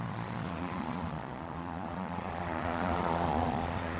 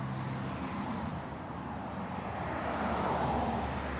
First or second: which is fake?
first